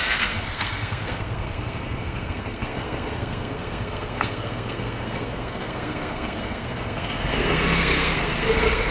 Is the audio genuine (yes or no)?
no